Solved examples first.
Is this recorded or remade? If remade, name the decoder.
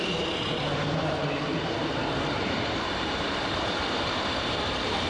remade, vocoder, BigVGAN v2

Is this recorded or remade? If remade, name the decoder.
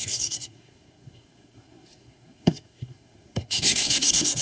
remade, codec, SNAC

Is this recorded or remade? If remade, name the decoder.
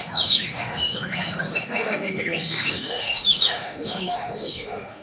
remade, autoencoder, DAC-VAE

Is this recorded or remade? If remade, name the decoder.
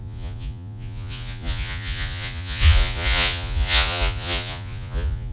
remade, vocoder, Vocos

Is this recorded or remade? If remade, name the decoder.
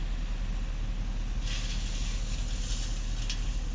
recorded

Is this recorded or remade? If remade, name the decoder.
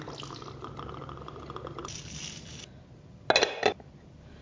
recorded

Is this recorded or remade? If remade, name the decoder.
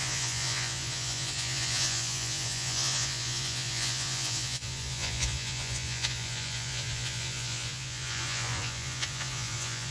remade, vocoder, Vocos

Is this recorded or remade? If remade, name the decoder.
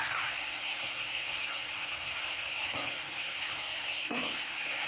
remade, codec, SNAC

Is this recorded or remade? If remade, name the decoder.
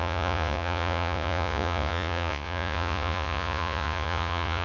remade, vocoder, Vocos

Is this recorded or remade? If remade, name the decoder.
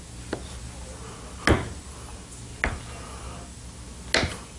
recorded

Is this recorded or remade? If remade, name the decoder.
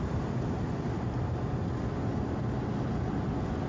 recorded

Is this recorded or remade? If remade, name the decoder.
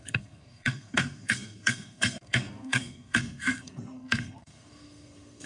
remade, codec, SNAC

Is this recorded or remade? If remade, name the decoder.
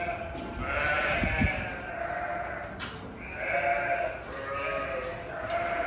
recorded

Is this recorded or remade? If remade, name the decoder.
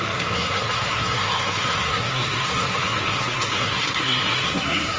remade, codec, SNAC